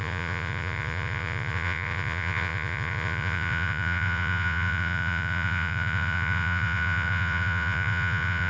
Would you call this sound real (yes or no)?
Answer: no